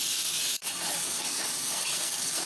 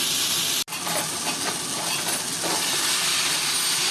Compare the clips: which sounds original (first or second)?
second